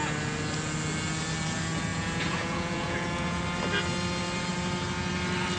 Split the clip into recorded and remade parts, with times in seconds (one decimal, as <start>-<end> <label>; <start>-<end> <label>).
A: 0.0-1.9 recorded; 1.9-3.4 remade; 3.4-5.6 recorded